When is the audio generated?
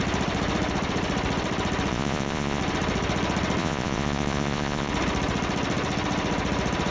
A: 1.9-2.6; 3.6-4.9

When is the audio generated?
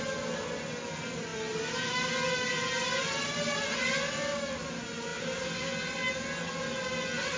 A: none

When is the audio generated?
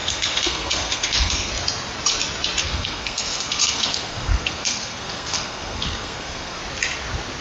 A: 0.0-1.5; 2.6-6.6